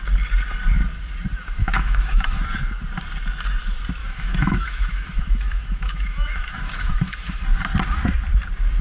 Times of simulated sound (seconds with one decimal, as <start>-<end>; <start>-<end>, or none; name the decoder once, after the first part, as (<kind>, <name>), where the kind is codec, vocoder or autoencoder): 1.6-2.4 (autoencoder, DAC-VAE); 4.0-7.4